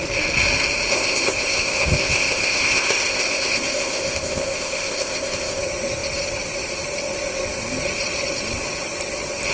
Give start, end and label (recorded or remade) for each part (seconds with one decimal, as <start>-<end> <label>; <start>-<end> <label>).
0.0-0.9 recorded; 0.9-5.6 remade; 5.6-9.5 recorded